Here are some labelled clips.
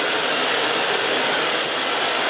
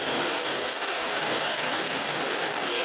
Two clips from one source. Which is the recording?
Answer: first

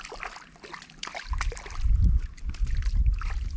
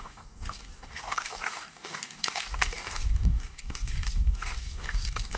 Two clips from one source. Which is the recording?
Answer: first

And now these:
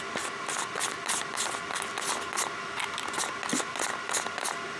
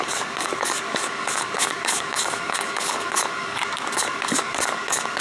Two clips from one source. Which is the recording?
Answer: first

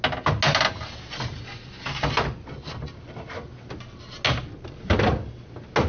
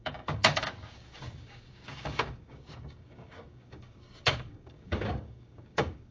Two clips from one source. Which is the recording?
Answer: first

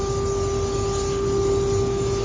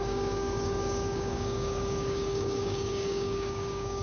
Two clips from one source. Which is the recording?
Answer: first